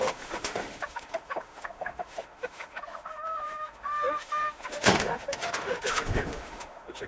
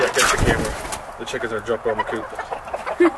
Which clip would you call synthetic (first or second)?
first